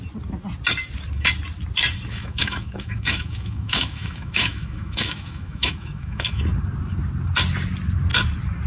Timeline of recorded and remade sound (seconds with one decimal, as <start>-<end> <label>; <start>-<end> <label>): 0.0-2.1 recorded; 2.1-6.4 remade; 6.4-8.7 recorded